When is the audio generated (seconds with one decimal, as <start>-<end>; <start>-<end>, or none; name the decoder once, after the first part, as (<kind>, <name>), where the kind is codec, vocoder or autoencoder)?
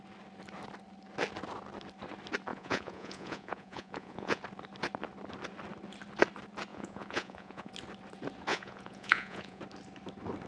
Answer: 2.5-4.4 (vocoder, Vocos); 6.7-7.7; 8.5-9.6